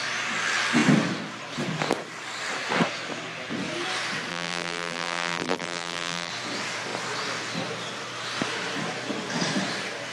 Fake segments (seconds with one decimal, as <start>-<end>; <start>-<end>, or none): 4.3-6.3